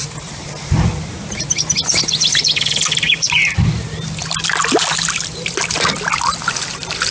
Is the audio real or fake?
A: real